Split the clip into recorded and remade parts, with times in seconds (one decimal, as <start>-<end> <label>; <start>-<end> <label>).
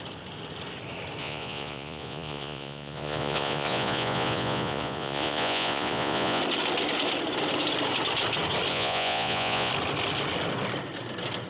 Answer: 0.0-1.2 recorded; 1.2-6.4 remade; 6.4-8.7 recorded; 8.7-9.7 remade; 9.7-11.5 recorded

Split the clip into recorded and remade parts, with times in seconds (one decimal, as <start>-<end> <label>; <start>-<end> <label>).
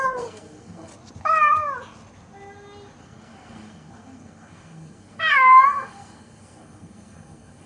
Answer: 0.0-0.9 remade; 0.9-3.0 recorded; 3.0-7.7 remade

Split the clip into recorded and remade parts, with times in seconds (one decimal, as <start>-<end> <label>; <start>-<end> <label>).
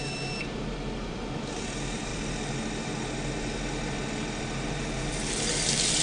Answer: 0.0-2.1 remade; 2.1-5.4 recorded; 5.4-6.0 remade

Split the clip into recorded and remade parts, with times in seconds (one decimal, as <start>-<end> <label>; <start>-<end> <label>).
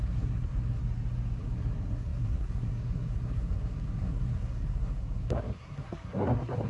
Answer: 0.0-0.8 remade; 0.8-1.4 recorded; 1.4-6.7 remade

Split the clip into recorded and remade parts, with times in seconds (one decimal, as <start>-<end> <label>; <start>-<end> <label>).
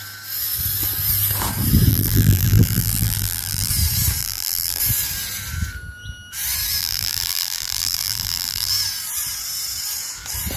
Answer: 0.0-1.9 recorded; 1.9-3.7 remade; 3.7-4.2 recorded; 4.2-4.8 remade; 4.8-6.8 recorded; 6.8-8.7 remade; 8.7-10.6 recorded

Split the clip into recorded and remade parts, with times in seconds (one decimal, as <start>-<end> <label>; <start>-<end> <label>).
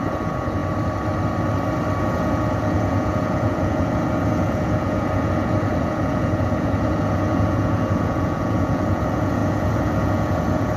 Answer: 0.0-0.6 remade; 0.6-2.0 recorded; 2.0-10.8 remade